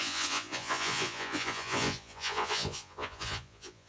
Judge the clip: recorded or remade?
remade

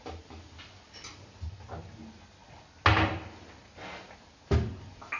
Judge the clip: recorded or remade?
recorded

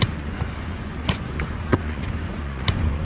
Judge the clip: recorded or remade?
remade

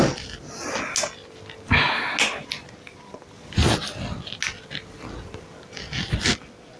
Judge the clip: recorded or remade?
recorded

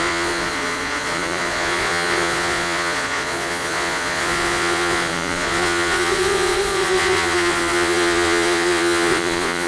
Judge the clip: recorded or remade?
remade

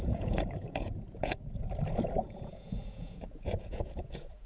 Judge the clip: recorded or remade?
remade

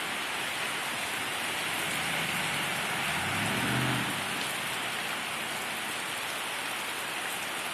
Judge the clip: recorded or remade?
recorded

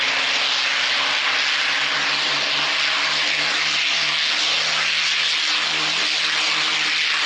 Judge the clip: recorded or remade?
recorded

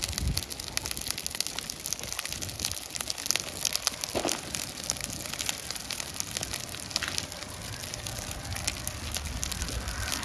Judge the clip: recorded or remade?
recorded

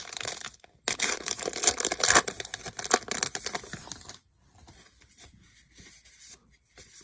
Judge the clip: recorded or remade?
recorded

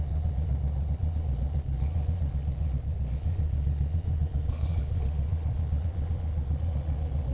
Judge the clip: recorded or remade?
remade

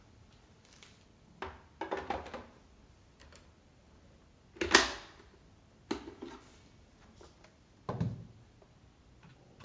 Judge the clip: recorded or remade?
recorded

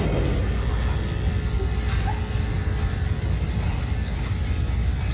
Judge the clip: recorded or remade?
recorded